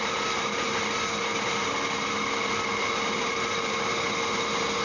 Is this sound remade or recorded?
recorded